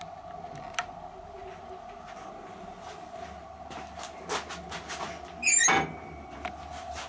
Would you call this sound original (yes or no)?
yes